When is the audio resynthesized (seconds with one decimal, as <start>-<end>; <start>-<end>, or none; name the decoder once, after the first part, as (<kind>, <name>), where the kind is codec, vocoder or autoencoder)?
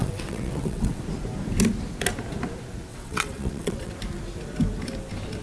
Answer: 0.0-1.0 (vocoder, WaveNeXt); 2.9-3.9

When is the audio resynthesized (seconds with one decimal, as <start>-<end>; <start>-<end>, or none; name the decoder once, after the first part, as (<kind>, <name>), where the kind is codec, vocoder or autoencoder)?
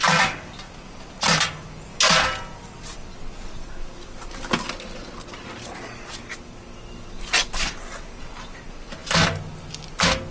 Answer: none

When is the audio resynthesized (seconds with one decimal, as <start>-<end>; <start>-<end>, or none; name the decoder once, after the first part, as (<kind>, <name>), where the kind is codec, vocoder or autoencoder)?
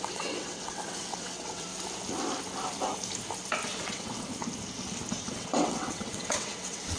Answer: 0.0-1.7 (vocoder, WaveNeXt); 3.8-4.3; 5.3-7.0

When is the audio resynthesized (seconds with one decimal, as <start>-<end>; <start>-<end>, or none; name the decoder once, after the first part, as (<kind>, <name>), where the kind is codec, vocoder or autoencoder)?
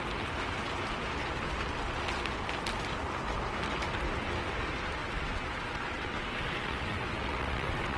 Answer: 5.0-8.0 (vocoder, WaveNeXt)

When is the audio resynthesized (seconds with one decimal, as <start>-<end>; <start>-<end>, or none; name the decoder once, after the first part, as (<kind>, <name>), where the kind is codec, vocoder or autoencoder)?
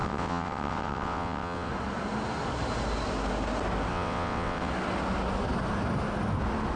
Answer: 0.0-1.7 (vocoder, WaveNeXt); 3.9-4.7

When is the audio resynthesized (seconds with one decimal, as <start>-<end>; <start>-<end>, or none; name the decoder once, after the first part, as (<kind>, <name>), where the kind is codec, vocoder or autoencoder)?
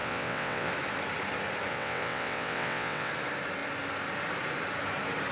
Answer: 0.0-0.7 (vocoder, WaveNeXt); 1.7-3.1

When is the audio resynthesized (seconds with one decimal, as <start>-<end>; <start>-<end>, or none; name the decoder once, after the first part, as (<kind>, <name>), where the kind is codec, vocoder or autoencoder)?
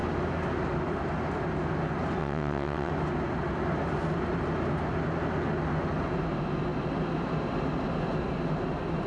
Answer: 2.2-2.9 (vocoder, WaveNeXt)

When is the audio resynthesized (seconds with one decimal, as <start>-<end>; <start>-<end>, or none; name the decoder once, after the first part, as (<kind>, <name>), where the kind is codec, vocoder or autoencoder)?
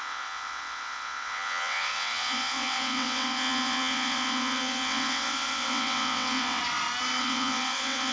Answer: 0.0-6.6 (vocoder, WaveNeXt); 7.2-8.1